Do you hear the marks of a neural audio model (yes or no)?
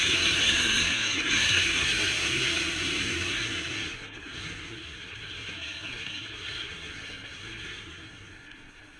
yes